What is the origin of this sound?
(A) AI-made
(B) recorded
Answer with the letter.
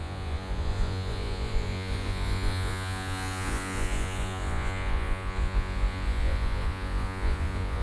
A